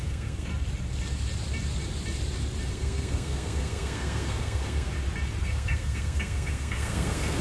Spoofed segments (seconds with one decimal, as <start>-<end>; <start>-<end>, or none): 0.0-0.5; 2.7-4.9; 5.4-7.4